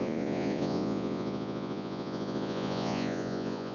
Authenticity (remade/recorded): remade